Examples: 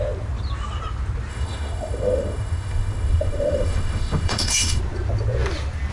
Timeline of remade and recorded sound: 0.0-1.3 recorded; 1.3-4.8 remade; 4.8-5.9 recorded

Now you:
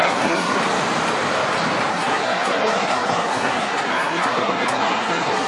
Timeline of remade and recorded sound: 0.0-0.6 remade; 0.6-1.9 recorded; 1.9-5.5 remade

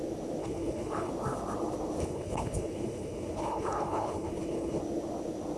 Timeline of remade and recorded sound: 0.0-0.4 recorded; 0.4-1.1 remade; 1.1-2.0 recorded; 2.0-4.8 remade; 4.8-5.6 recorded

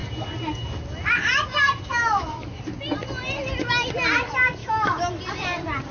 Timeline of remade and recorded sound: 0.0-1.9 recorded; 1.9-2.6 remade; 2.6-4.6 recorded; 4.6-5.2 remade; 5.2-5.9 recorded